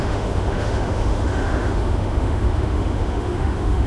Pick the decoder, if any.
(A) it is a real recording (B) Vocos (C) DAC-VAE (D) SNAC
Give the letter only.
C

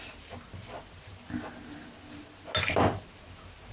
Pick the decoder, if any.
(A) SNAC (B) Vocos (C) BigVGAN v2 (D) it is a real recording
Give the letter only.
D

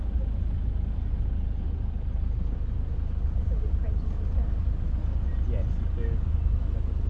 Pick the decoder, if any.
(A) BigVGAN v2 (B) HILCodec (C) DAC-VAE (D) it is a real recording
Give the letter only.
D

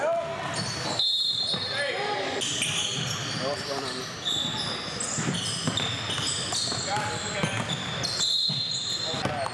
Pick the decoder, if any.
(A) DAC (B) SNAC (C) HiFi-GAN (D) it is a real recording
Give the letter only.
D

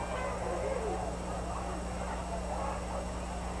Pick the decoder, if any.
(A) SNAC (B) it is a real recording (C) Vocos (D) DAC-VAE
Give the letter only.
B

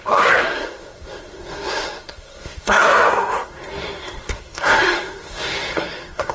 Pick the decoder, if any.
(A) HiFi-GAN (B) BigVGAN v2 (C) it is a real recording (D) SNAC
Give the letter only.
D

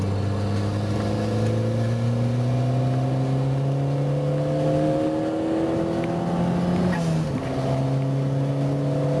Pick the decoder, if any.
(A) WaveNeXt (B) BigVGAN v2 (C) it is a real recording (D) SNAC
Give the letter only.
C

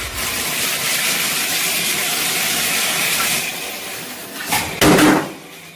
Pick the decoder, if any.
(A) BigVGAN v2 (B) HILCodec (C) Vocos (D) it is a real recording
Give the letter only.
D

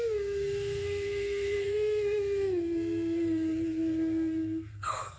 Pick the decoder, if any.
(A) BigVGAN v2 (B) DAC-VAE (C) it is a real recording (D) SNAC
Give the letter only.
D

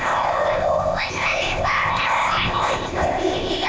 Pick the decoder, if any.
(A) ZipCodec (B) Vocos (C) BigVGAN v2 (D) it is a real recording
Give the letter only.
A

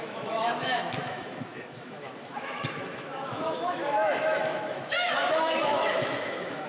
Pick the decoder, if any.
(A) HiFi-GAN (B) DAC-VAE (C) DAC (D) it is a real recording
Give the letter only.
B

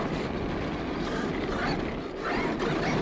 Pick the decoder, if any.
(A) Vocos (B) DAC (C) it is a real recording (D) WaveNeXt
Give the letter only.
C